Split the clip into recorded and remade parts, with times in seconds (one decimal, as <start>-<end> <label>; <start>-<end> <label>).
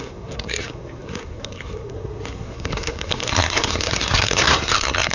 0.0-5.1 remade